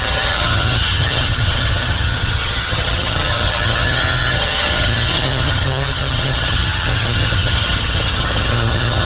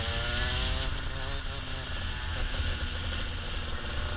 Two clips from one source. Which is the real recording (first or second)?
second